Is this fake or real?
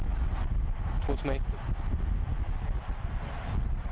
real